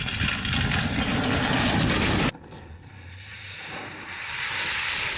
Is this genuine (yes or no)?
yes